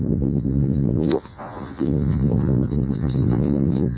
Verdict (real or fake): fake